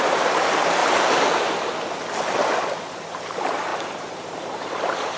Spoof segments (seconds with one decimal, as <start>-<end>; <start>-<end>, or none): 0.0-0.8; 2.9-5.2